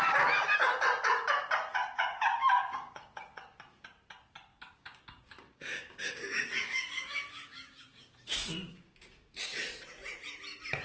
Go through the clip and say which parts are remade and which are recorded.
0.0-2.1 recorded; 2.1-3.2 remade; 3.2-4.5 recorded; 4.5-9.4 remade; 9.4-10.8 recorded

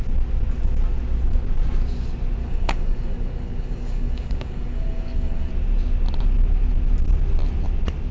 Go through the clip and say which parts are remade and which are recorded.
0.0-2.4 recorded; 2.4-5.5 remade; 5.5-8.1 recorded